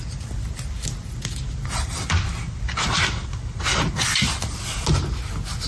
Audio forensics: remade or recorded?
recorded